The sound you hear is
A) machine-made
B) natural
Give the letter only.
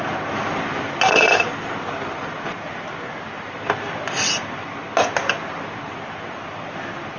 B